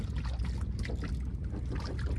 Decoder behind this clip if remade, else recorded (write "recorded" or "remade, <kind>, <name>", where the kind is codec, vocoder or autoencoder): recorded